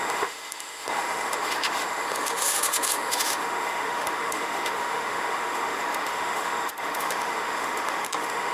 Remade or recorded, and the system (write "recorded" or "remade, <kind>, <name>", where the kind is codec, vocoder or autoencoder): remade, autoencoder, DAC-VAE